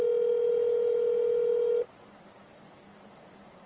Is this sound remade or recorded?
recorded